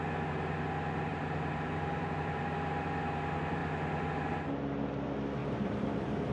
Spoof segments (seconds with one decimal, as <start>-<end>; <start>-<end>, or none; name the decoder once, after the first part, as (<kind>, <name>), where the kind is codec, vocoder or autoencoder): 1.1-2.4 (vocoder, BigVGAN v2); 5.4-6.3